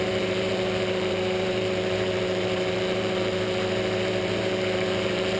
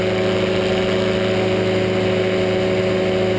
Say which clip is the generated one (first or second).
first